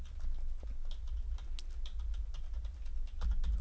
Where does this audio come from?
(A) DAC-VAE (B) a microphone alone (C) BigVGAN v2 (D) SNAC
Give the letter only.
B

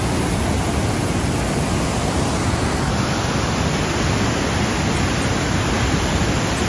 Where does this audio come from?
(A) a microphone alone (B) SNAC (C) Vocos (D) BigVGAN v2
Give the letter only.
A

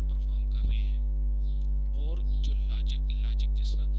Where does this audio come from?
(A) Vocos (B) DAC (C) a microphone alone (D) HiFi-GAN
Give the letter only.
B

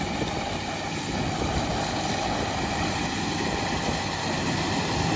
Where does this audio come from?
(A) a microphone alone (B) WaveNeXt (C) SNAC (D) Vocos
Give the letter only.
A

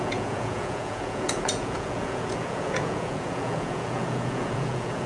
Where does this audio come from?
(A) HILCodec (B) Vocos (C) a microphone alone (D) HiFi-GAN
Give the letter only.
B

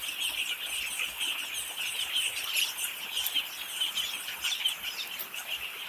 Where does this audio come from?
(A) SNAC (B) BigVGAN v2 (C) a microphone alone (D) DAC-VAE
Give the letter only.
C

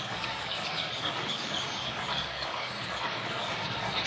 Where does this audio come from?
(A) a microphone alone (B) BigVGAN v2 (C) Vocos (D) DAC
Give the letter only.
D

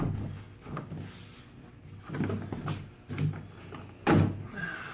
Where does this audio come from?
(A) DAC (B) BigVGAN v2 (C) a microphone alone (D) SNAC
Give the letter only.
C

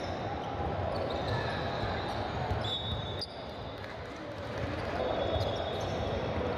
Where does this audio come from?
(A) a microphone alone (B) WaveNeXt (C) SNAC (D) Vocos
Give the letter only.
A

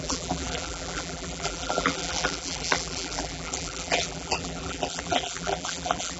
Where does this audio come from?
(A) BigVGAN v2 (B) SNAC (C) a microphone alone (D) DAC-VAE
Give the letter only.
A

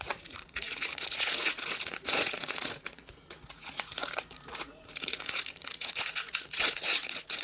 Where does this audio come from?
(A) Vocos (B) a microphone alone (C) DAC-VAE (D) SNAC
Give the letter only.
A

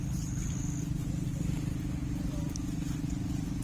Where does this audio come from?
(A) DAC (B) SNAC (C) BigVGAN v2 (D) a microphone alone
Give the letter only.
D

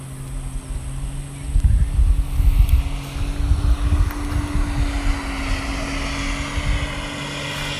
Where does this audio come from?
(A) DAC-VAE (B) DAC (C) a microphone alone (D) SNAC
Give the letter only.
C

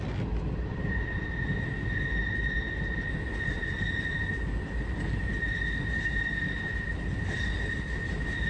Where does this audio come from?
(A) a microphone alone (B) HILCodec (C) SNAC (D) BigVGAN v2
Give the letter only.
A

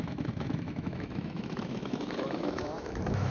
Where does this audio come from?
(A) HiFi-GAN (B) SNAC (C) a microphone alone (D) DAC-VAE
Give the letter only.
D